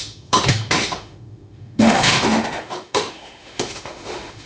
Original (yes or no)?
no